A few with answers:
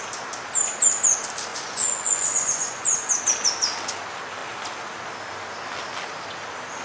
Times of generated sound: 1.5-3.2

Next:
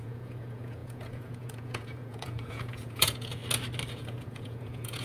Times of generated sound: 0.0-3.4; 3.9-5.0

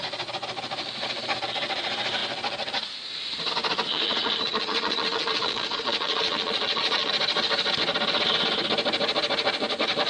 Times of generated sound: 3.9-7.1

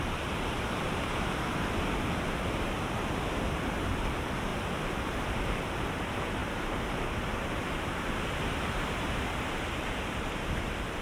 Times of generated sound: 0.0-4.5; 5.0-11.0

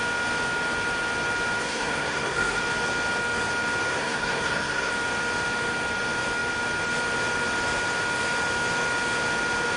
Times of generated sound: 1.6-2.6; 3.9-4.9

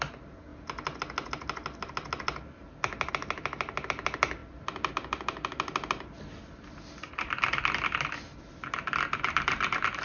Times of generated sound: none

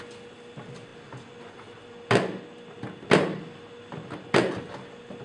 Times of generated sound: none